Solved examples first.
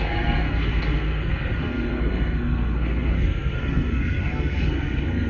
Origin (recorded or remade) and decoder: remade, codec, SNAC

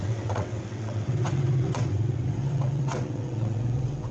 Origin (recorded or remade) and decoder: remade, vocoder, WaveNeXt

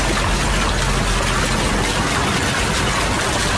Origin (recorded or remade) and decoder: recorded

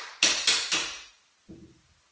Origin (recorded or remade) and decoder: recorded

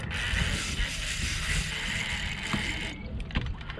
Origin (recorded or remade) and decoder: recorded